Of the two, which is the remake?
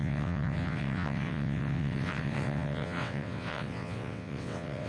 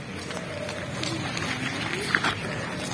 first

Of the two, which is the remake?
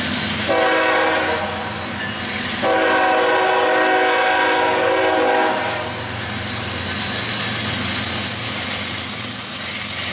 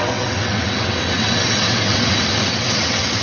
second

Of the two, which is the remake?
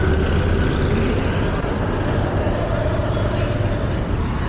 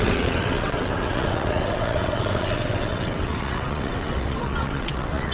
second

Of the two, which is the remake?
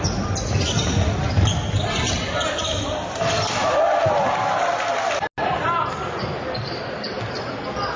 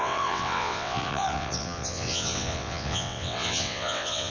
second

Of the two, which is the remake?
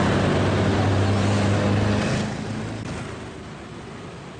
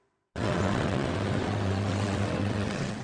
second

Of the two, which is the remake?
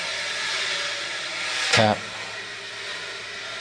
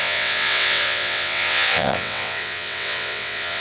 second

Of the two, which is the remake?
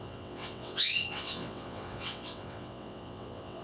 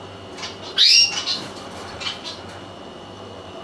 first